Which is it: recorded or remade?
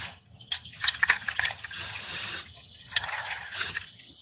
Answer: remade